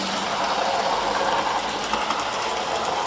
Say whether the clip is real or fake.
real